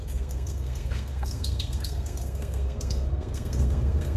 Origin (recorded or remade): remade